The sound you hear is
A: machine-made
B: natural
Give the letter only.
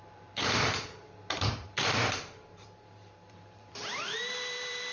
A